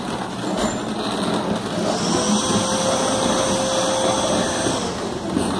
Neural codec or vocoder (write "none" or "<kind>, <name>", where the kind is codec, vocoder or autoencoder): none